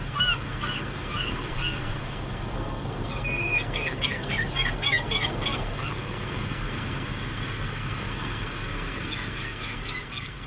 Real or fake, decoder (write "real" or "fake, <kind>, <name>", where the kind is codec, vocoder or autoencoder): fake, codec, SNAC